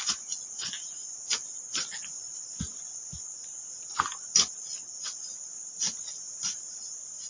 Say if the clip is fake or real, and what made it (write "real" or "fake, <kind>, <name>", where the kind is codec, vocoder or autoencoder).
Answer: real